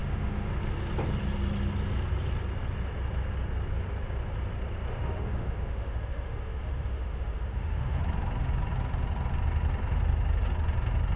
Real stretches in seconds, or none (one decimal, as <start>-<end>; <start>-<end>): 0.5-4.9; 8.0-11.2